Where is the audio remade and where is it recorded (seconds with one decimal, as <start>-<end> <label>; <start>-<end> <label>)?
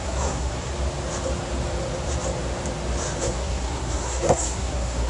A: 0.0-0.7 remade; 0.7-3.2 recorded; 3.2-5.1 remade